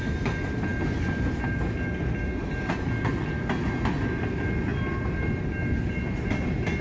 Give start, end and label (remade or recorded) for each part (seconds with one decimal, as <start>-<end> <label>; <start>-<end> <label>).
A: 0.0-6.8 recorded

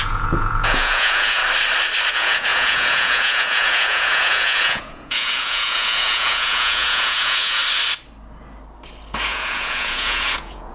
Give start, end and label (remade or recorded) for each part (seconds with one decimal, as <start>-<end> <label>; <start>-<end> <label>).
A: 0.0-1.4 remade; 1.4-2.1 recorded; 2.1-7.6 remade; 7.6-9.3 recorded; 9.3-10.7 remade